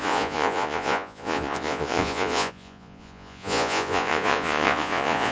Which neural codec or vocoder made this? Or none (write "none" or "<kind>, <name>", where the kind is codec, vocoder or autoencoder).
vocoder, Vocos